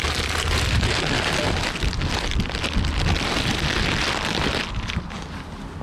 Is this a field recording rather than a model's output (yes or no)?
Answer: yes